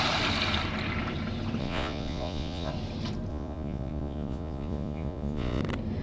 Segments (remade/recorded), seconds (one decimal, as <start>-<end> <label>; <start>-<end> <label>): 0.0-1.6 recorded; 1.6-2.7 remade; 2.7-3.3 recorded; 3.3-5.6 remade; 5.6-6.0 recorded